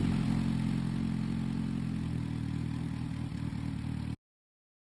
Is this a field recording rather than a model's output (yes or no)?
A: yes